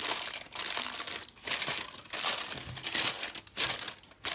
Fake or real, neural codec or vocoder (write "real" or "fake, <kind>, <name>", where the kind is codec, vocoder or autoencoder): real